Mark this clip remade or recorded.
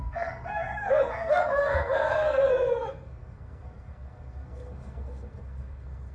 remade